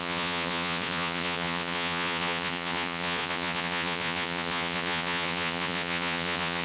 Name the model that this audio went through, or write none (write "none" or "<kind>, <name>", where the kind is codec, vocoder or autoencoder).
vocoder, Vocos